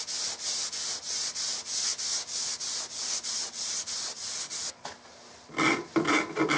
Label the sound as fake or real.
real